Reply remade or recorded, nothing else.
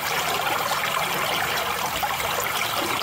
recorded